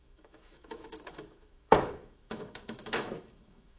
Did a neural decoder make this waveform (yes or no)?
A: yes